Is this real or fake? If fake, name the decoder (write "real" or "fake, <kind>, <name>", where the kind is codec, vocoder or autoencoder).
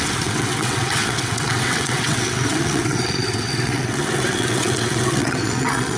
fake, vocoder, WaveNeXt